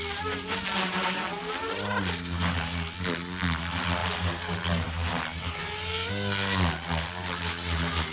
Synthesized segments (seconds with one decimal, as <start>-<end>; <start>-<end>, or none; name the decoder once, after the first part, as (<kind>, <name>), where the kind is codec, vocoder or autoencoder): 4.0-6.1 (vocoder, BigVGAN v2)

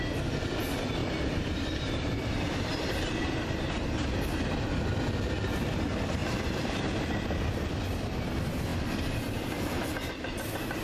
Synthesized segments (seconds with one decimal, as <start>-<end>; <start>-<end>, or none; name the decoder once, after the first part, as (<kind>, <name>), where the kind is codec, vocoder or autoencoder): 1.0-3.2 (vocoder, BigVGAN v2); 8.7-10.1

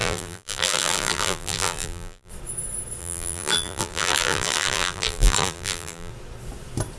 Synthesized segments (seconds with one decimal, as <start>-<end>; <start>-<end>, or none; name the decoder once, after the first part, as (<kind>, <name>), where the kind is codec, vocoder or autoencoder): 0.0-2.3 (vocoder, BigVGAN v2); 3.0-6.1

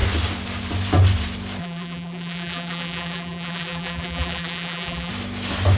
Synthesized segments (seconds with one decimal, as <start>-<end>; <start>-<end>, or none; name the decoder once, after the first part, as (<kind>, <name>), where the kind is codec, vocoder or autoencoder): 1.6-5.1 (vocoder, BigVGAN v2)

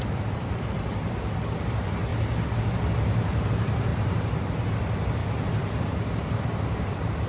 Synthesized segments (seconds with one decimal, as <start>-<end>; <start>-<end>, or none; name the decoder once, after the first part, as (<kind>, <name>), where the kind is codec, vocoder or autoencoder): 0.0-2.1 (vocoder, BigVGAN v2); 2.7-7.3

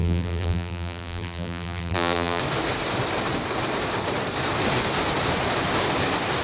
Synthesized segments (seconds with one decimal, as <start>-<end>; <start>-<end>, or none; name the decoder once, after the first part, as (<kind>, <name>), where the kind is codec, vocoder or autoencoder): 0.0-2.4 (vocoder, BigVGAN v2)

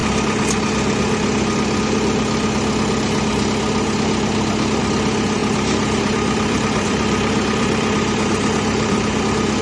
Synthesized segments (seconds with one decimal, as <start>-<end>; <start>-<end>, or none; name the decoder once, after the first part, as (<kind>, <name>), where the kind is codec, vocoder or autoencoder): 5.4-9.2 (vocoder, BigVGAN v2)